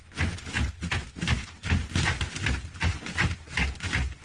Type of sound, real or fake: real